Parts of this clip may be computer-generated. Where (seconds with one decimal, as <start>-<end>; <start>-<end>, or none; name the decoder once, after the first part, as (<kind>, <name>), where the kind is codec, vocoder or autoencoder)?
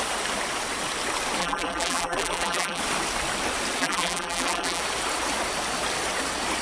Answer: 1.4-2.8 (vocoder, BigVGAN v2); 3.8-4.8